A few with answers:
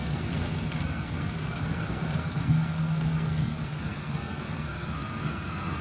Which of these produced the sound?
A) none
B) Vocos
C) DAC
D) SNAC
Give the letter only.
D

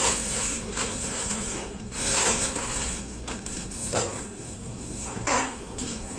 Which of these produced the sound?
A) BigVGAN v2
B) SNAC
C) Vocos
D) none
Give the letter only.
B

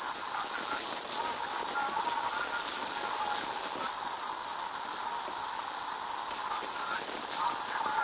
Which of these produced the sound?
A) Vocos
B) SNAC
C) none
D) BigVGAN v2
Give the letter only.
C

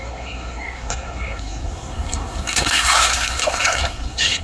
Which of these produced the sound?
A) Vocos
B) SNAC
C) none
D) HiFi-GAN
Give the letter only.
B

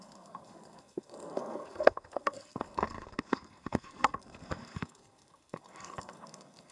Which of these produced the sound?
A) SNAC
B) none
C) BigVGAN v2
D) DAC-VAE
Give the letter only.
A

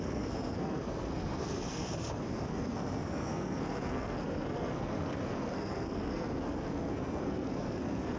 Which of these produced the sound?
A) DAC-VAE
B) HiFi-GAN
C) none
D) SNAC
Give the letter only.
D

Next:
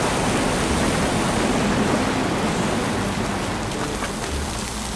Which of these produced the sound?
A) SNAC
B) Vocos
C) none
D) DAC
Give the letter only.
C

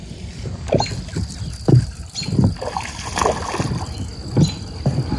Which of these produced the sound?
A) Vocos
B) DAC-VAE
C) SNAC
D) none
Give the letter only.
D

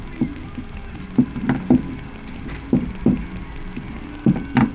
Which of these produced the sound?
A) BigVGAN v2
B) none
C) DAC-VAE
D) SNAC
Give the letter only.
B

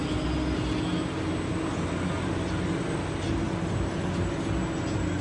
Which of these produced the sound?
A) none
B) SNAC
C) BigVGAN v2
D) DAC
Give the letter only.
A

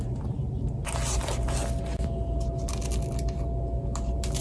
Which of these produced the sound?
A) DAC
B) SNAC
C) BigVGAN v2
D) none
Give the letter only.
D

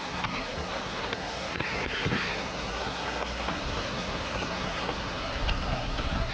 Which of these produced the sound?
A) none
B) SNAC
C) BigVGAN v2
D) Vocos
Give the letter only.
B